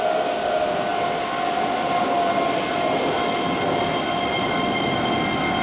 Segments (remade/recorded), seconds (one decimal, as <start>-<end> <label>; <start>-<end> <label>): 0.0-5.6 recorded